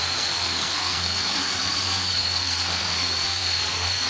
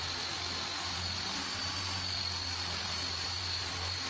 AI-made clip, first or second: first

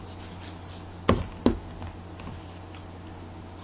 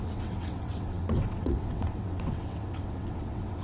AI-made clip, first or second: second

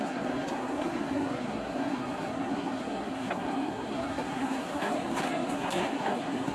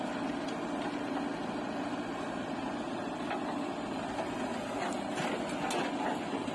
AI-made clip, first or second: first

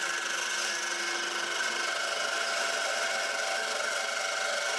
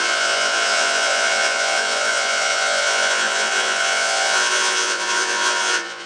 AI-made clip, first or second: second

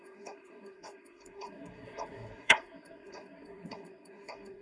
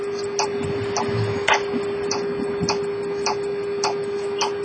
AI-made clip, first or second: first